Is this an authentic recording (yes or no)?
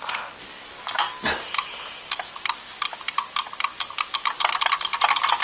yes